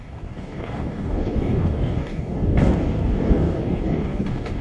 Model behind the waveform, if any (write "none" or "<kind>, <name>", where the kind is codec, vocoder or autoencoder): codec, DAC